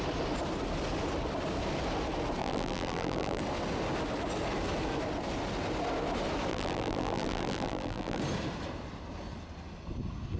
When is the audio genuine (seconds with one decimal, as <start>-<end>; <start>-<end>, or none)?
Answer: 0.0-2.4; 3.4-6.5; 8.2-10.4